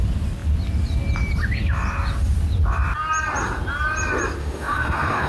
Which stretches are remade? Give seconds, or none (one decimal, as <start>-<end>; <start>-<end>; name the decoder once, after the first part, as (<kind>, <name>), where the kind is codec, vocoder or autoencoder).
4.4-5.3 (autoencoder, DAC-VAE)